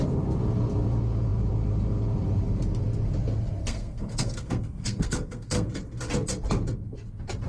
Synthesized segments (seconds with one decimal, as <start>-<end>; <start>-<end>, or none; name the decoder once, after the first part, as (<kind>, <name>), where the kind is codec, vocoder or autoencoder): 3.6-5.7 (codec, SNAC)